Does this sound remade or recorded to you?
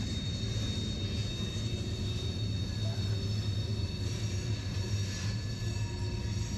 recorded